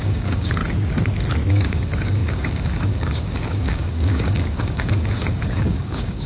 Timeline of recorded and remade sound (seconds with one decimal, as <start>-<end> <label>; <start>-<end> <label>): 0.0-0.6 remade; 0.6-1.5 recorded; 1.5-6.3 remade